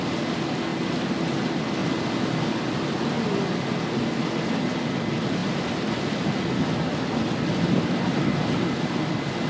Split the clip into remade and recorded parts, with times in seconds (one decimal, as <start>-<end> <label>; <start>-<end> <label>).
0.0-9.5 recorded